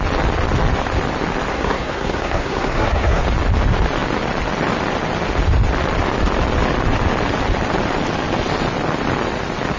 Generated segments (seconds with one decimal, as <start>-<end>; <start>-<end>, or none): 1.5-3.2